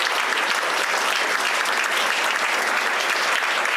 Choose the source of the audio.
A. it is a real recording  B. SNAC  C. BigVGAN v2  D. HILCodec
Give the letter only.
A